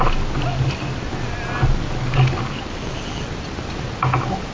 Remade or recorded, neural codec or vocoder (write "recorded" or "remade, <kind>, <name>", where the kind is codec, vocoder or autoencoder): recorded